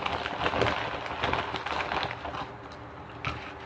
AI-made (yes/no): no